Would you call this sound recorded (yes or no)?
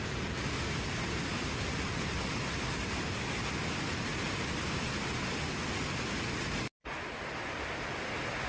yes